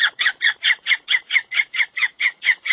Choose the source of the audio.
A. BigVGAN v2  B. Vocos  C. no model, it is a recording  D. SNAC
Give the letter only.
B